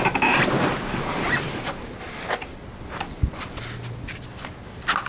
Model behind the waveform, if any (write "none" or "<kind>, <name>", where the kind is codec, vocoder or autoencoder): none